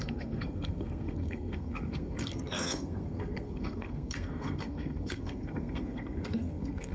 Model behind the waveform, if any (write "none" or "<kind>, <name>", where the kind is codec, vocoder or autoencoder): codec, SNAC